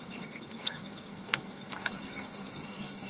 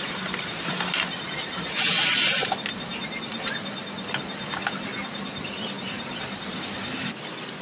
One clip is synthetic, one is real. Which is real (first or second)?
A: second